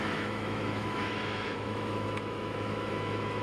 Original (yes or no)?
no